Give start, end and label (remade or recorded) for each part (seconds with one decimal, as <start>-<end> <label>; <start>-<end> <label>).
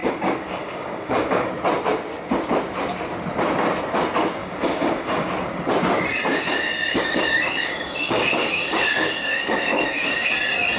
0.0-1.5 remade; 1.5-4.4 recorded; 4.4-5.3 remade; 5.3-6.3 recorded; 6.3-10.3 remade; 10.3-10.8 recorded